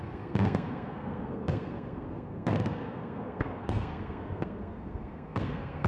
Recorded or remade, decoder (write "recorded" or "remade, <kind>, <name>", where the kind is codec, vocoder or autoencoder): remade, codec, SNAC